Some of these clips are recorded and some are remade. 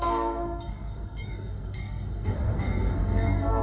remade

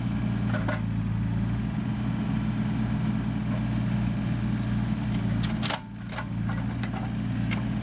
recorded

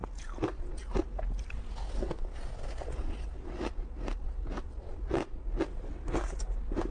recorded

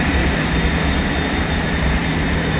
remade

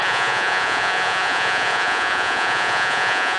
remade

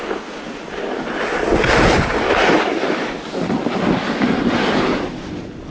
recorded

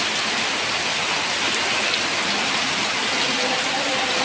recorded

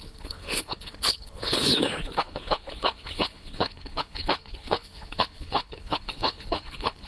remade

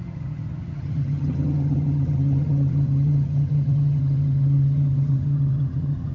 remade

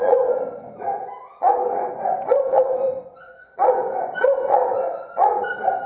remade